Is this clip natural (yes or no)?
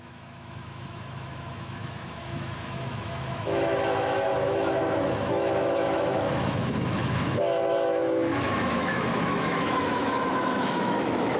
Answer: no